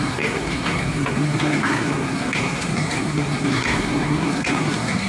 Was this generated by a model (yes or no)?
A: yes